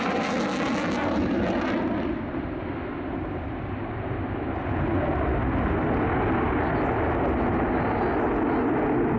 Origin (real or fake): real